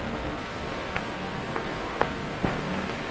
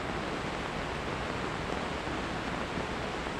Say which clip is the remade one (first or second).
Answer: first